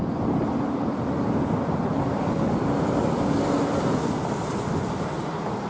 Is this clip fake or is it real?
real